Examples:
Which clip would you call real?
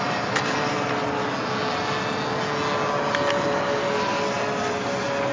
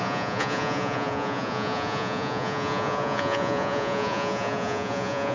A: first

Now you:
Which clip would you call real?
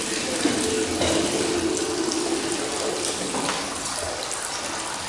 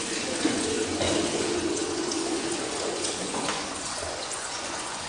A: first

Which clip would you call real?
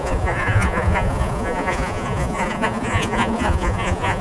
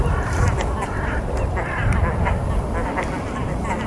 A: second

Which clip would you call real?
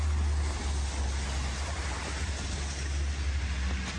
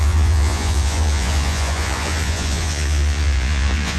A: first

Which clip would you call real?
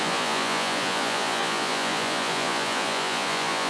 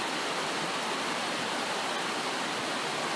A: second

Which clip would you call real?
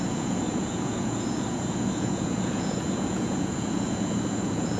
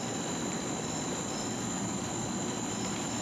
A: second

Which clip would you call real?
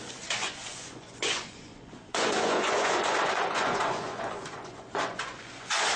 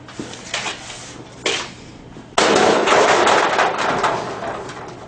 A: second